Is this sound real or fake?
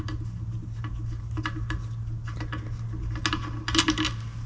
real